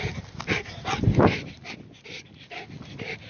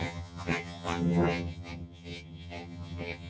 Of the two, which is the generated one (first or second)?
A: second